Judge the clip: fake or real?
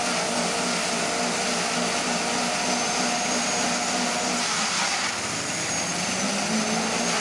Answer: real